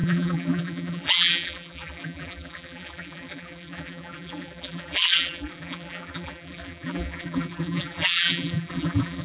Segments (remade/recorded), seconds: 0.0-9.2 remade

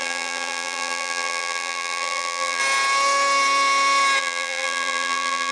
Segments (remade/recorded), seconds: 0.0-2.6 remade; 2.6-4.2 recorded; 4.2-5.5 remade